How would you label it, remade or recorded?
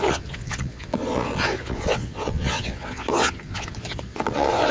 remade